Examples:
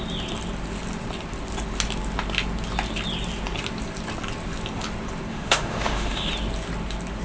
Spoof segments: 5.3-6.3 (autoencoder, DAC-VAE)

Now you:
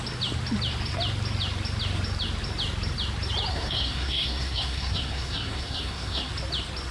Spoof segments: 3.5-6.3 (codec, SNAC)

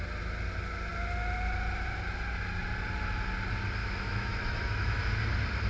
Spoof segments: 3.8-5.0 (autoencoder, DAC-VAE)